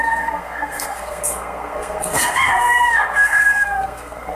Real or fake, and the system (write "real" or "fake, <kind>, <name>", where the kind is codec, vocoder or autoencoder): fake, codec, SNAC